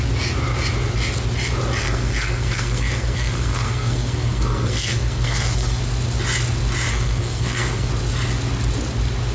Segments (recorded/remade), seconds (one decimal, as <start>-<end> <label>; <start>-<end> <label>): 0.0-1.8 recorded; 1.8-5.8 remade; 5.8-6.9 recorded; 6.9-7.9 remade; 7.9-9.3 recorded